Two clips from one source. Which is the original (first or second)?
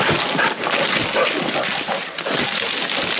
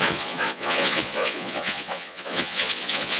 first